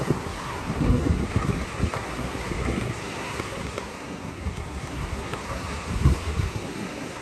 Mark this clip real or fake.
fake